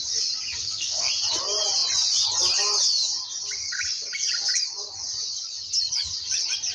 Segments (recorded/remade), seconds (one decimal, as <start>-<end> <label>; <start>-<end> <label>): 0.0-0.6 recorded; 0.6-1.1 remade; 1.1-6.7 recorded